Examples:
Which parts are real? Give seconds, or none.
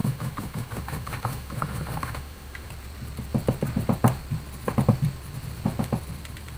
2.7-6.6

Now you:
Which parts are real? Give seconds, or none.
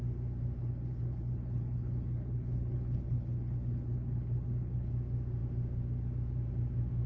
0.0-0.6; 4.9-7.1